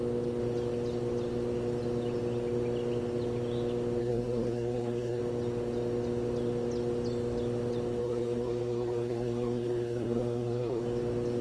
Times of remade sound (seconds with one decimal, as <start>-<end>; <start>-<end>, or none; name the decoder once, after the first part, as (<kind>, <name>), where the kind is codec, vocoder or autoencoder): 4.0-5.2 (codec, SNAC); 8.0-10.8